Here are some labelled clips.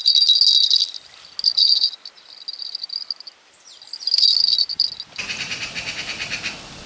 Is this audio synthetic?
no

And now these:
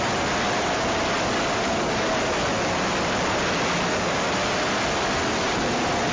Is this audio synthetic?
no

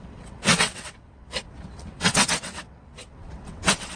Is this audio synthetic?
yes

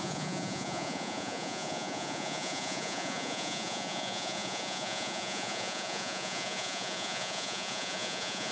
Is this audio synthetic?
yes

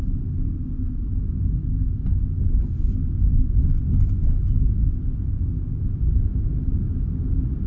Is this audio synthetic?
no